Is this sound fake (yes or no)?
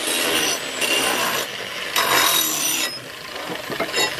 no